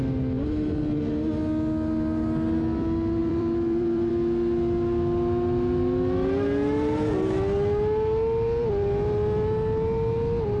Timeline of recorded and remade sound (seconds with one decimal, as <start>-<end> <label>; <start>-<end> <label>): 0.0-3.2 recorded; 3.2-4.1 remade; 4.1-10.6 recorded